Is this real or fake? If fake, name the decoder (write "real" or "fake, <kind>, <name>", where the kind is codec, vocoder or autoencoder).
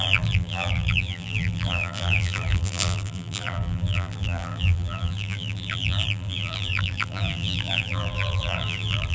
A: fake, vocoder, BigVGAN v2